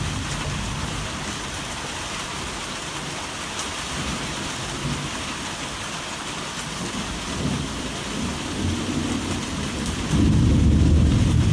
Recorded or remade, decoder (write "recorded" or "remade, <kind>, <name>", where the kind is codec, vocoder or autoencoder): recorded